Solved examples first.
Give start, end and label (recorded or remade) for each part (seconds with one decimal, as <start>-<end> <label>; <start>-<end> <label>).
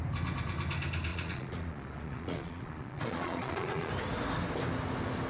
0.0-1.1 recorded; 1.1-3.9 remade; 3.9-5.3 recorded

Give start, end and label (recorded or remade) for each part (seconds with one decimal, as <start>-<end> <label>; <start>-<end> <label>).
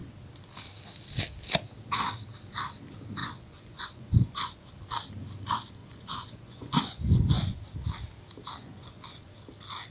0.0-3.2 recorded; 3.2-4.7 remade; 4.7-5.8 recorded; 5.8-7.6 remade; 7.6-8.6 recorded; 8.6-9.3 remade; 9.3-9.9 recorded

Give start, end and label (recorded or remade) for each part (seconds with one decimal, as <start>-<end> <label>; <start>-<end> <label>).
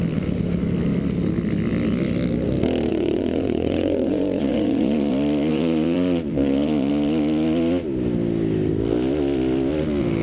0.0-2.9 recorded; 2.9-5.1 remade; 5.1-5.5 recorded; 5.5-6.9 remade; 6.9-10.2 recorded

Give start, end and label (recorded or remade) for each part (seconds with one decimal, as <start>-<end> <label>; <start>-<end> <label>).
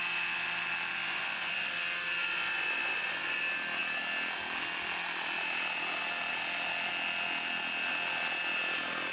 0.0-1.0 recorded; 1.0-1.7 remade; 1.7-2.2 recorded; 2.2-3.4 remade; 3.4-9.1 recorded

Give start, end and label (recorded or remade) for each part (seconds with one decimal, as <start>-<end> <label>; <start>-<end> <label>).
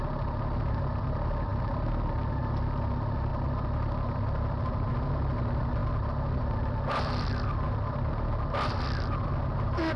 0.0-10.0 recorded